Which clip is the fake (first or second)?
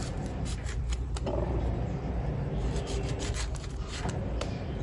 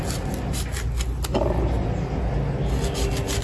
first